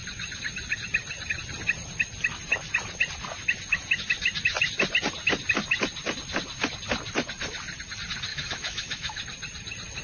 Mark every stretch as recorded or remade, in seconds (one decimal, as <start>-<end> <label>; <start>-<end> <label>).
0.0-8.3 recorded; 8.3-9.2 remade; 9.2-10.0 recorded